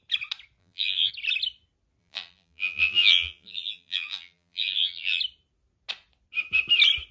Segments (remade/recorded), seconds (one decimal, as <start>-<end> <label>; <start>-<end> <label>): 0.0-0.6 recorded; 0.6-1.1 remade; 1.1-2.0 recorded; 2.0-5.2 remade; 5.2-7.1 recorded